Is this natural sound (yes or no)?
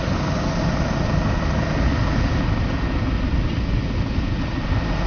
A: yes